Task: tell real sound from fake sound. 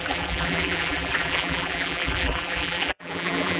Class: fake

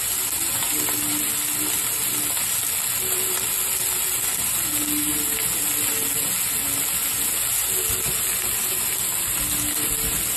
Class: real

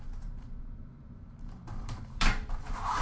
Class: fake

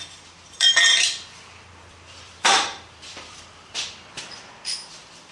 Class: fake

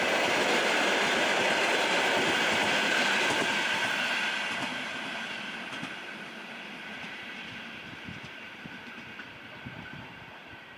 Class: fake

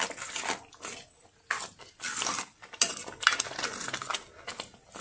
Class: real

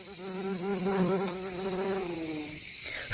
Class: fake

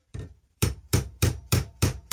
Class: fake